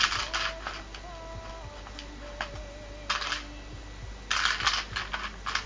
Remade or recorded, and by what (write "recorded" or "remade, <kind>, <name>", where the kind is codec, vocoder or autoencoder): recorded